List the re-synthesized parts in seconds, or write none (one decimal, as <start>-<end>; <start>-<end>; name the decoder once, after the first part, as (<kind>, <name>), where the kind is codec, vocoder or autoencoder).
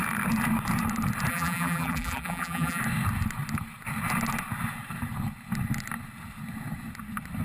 1.3-2.8 (vocoder, BigVGAN v2)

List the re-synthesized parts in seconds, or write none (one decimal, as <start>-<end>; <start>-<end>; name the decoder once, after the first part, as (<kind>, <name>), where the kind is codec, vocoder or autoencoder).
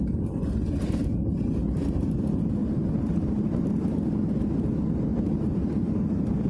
2.6-4.0 (vocoder, BigVGAN v2); 5.1-6.5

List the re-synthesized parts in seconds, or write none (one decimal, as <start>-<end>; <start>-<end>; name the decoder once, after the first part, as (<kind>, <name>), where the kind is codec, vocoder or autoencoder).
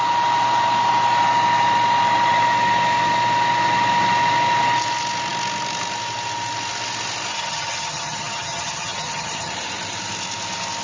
7.3-9.5 (vocoder, HiFi-GAN)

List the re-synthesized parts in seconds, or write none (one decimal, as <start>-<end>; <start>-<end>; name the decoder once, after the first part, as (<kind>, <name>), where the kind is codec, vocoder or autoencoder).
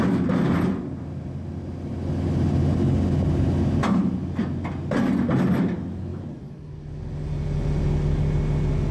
none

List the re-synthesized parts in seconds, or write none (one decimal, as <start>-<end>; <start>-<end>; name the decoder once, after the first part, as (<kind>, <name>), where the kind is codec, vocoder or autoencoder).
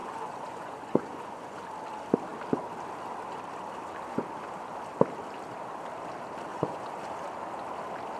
0.0-1.6 (vocoder, Vocos); 6.5-7.0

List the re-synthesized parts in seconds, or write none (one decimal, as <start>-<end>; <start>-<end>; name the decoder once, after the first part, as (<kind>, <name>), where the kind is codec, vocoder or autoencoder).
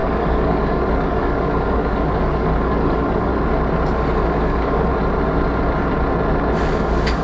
0.0-3.3 (codec, DAC); 4.4-4.9; 6.8-7.2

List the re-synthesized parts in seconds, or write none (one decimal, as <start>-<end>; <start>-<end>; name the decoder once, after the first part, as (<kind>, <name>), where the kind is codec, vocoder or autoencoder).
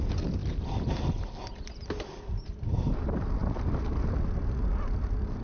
none